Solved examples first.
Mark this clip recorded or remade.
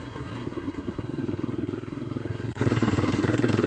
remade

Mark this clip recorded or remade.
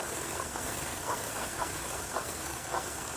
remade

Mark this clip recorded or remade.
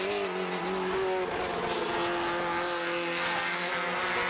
recorded